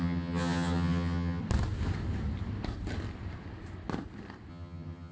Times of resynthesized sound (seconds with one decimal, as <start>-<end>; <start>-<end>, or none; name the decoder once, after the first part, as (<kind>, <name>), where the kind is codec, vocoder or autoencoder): 0.0-1.4 (vocoder, HiFi-GAN); 4.5-5.1